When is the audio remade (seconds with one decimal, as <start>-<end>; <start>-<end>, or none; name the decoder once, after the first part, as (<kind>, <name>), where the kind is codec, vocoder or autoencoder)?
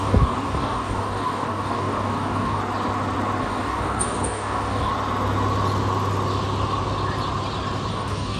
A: 0.0-2.6 (codec, DAC); 3.4-4.9; 7.9-8.4